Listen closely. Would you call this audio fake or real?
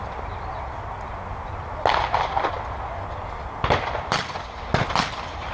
real